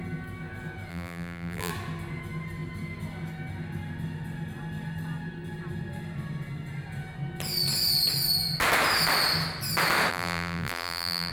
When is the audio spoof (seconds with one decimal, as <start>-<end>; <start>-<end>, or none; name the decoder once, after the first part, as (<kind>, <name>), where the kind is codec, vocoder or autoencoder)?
0.9-1.7 (vocoder, BigVGAN v2); 10.1-11.3